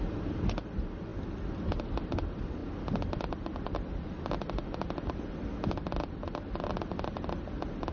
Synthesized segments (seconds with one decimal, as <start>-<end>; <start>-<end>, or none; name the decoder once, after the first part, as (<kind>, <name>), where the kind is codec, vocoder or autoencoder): none